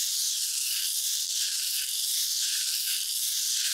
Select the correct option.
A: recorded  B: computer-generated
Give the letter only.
A